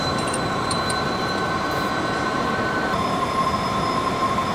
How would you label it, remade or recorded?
remade